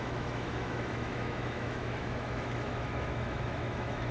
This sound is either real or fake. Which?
fake